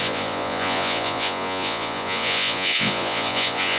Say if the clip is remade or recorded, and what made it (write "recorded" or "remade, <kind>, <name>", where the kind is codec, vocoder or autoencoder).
remade, vocoder, Vocos